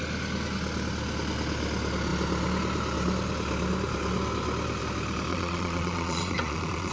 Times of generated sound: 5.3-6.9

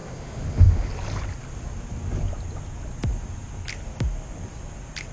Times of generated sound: 0.0-0.9